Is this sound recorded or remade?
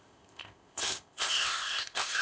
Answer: remade